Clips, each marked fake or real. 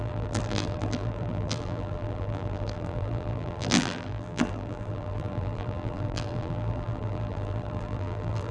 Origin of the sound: fake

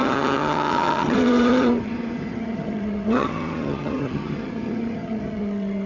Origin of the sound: fake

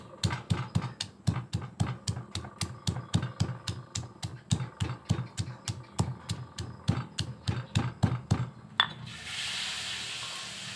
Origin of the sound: real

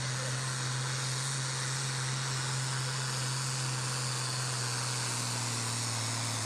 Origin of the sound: real